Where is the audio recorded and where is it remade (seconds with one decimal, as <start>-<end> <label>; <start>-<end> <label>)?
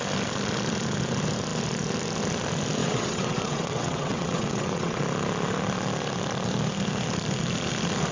0.0-2.8 recorded; 2.8-5.0 remade; 5.0-8.1 recorded